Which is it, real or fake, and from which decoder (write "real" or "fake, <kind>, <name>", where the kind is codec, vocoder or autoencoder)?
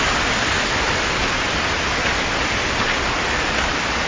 real